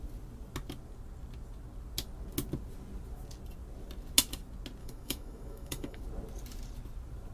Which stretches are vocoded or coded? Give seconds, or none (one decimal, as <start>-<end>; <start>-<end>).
4.8-6.0